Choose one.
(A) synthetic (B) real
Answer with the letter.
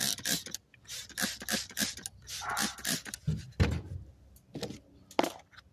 B